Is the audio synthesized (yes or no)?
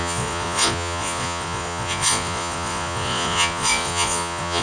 yes